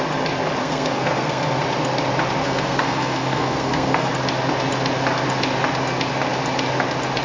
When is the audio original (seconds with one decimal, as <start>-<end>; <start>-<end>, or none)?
0.0-0.6; 1.6-2.4; 4.1-7.2